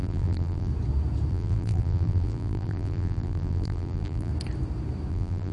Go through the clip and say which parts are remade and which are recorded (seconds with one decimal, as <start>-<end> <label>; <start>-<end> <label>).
0.0-0.7 remade; 0.7-1.3 recorded; 1.3-4.3 remade; 4.3-5.1 recorded; 5.1-5.5 remade